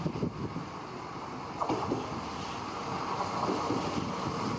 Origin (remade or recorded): recorded